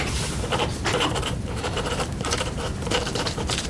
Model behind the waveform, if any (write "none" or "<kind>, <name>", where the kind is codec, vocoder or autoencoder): vocoder, BigVGAN v2